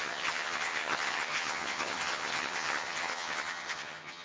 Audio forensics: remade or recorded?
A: remade